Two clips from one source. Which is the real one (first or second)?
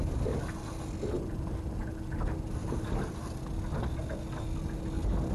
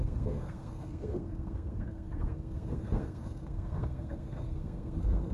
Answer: first